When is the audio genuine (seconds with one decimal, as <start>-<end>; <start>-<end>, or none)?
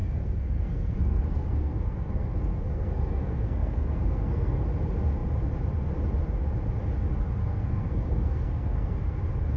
4.7-7.4; 9.2-9.6